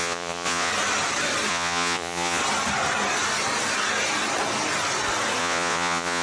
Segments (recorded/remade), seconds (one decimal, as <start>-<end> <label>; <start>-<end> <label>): 0.0-0.7 remade; 0.7-1.5 recorded; 1.5-2.4 remade; 2.4-5.4 recorded; 5.4-6.2 remade